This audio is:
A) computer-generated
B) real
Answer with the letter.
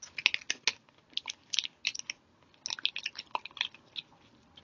B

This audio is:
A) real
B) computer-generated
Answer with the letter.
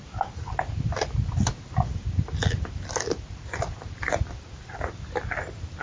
A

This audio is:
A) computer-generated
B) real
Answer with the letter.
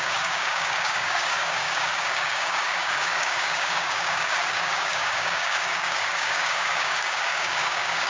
A